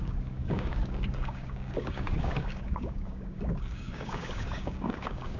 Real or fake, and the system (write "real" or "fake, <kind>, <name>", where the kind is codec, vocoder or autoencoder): fake, codec, DAC